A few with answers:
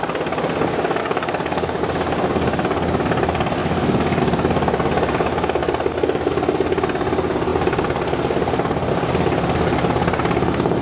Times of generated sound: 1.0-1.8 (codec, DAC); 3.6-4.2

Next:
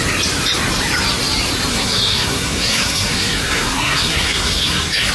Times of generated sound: 1.7-5.1 (codec, SNAC)

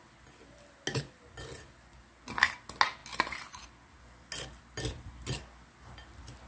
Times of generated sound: none